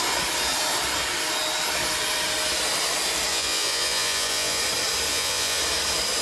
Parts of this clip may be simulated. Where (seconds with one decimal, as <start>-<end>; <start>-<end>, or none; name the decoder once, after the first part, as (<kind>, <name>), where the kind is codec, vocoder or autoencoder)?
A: 3.3-4.6 (vocoder, Vocos); 5.1-5.6